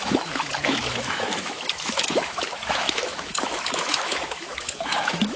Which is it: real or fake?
fake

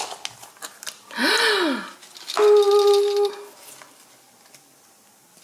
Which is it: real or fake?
real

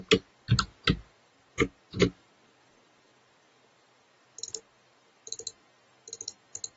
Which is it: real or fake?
real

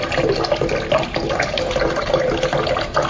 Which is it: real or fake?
real